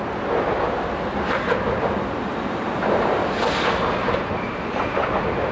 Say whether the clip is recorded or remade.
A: recorded